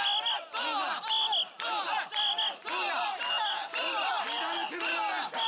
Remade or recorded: recorded